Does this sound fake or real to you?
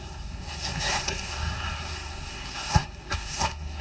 fake